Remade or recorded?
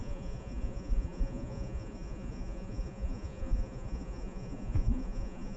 remade